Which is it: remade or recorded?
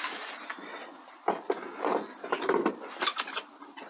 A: remade